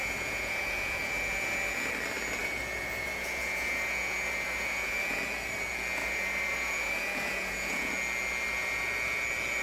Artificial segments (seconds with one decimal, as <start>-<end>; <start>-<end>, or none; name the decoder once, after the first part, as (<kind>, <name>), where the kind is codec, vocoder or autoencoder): 0.0-1.9 (vocoder, Vocos); 2.4-5.2; 6.0-7.9